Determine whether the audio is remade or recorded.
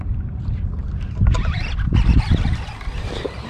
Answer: remade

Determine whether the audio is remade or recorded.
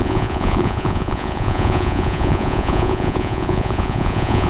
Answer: remade